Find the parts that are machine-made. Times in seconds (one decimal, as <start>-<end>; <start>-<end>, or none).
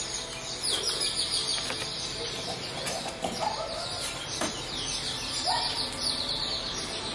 none